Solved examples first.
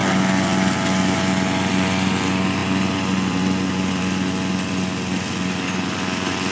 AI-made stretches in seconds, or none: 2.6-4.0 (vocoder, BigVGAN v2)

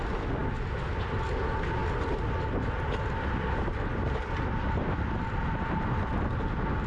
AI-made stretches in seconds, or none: none

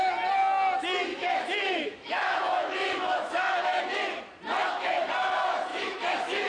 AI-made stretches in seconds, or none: 1.1-3.8 (autoencoder, DAC-VAE); 4.6-5.1; 5.7-6.5

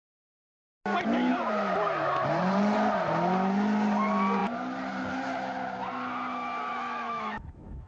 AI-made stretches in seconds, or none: 6.7-7.9 (autoencoder, DAC-VAE)

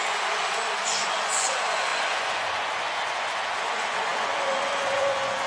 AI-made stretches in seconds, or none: 0.0-5.5 (vocoder, Vocos)